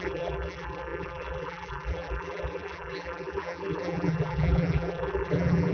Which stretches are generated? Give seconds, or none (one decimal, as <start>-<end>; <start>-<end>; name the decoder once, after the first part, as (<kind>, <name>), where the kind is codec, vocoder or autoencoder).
0.0-5.7 (vocoder, BigVGAN v2)